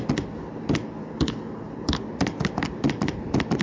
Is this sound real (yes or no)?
yes